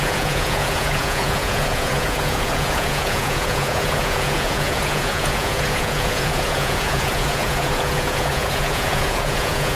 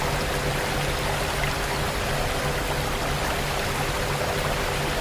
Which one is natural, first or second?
second